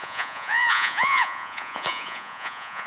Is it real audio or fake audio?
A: fake